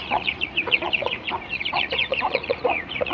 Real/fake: fake